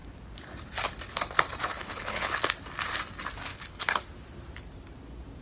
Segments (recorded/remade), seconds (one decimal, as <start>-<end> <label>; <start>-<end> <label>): 0.0-1.7 recorded; 1.7-2.4 remade; 2.4-3.5 recorded; 3.5-4.0 remade; 4.0-5.4 recorded